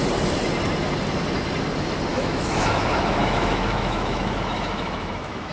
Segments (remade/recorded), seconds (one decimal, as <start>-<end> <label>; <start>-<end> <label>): 0.0-2.1 recorded; 2.1-5.5 remade